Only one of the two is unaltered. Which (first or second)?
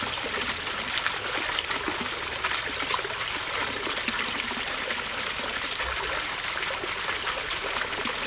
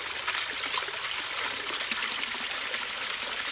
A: second